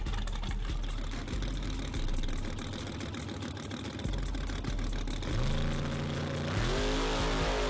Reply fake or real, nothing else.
real